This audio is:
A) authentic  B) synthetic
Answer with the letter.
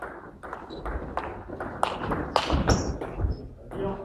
A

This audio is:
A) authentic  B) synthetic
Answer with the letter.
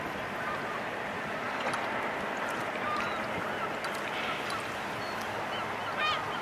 A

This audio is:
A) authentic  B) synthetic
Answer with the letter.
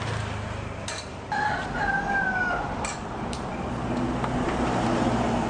A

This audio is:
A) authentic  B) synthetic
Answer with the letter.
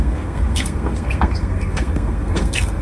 B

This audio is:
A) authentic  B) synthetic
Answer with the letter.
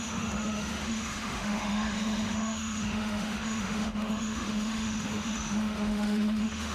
B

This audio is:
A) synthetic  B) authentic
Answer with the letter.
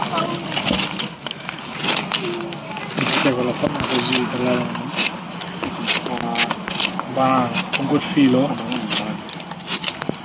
B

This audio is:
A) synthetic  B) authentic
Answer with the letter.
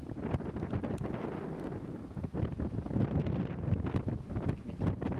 B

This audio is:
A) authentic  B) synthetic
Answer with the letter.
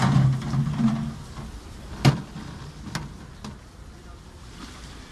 A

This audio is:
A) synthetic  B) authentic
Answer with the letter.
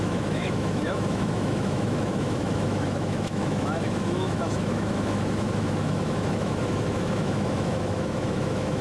A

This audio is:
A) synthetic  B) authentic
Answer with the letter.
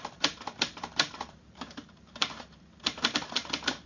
A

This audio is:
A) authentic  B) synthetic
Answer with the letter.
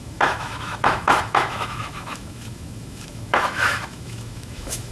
B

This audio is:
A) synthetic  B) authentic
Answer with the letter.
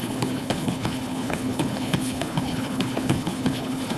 A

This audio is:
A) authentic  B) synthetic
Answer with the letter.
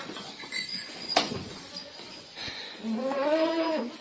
B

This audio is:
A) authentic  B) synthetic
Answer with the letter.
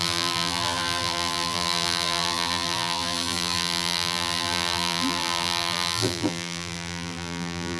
B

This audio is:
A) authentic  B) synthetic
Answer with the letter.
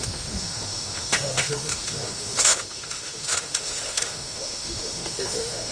B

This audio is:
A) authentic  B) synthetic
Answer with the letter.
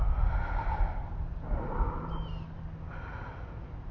A